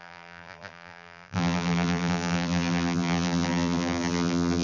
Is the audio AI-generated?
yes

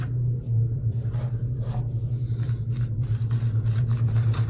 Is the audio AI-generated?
yes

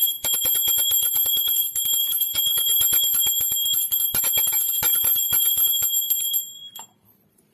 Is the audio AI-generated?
yes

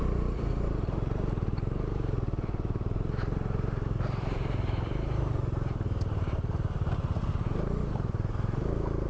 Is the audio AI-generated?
yes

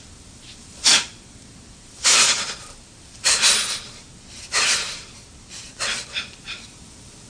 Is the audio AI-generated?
yes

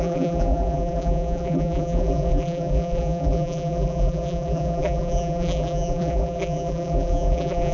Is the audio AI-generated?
yes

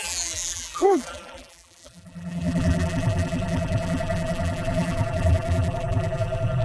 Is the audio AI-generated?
yes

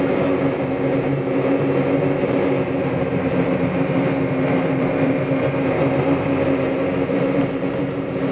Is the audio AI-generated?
yes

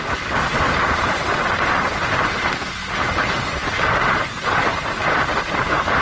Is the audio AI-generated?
no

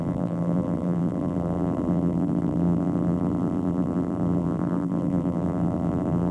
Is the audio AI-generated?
yes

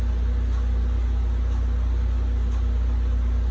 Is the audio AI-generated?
no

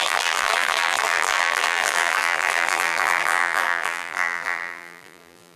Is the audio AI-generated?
yes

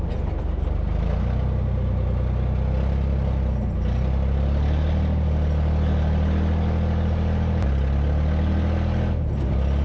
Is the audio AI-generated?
no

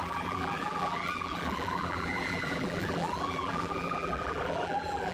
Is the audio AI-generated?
yes